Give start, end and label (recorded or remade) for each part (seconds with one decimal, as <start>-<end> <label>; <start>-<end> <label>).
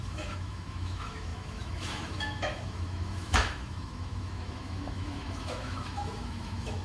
0.0-6.8 remade